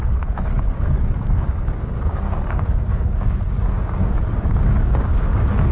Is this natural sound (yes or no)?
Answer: no